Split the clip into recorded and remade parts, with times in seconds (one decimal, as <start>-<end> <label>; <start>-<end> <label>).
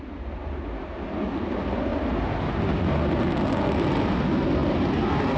0.0-5.4 recorded